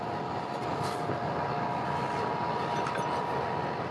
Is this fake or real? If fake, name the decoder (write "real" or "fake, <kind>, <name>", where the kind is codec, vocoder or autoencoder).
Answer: real